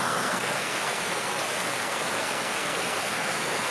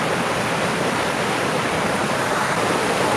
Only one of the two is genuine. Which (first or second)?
second